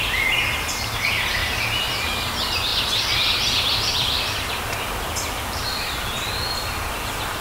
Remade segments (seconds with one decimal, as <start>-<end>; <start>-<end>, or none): 2.7-7.4